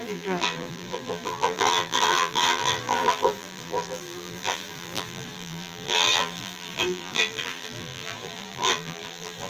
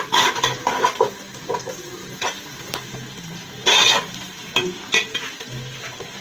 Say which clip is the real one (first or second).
second